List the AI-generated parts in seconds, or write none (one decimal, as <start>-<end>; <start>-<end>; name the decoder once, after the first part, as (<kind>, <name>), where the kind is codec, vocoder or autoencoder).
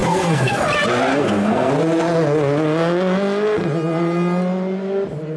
0.0-0.6 (codec, SNAC); 1.1-1.7